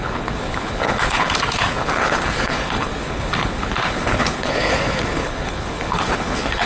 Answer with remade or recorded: remade